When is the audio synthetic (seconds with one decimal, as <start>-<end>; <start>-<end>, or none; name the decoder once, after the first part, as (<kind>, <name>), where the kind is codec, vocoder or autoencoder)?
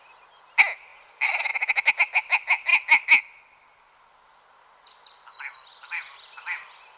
0.9-1.5 (vocoder, BigVGAN v2)